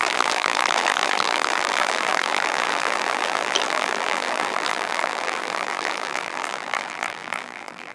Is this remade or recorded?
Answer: remade